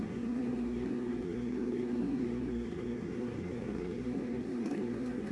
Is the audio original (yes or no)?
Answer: no